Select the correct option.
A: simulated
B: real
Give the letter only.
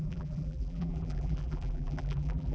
A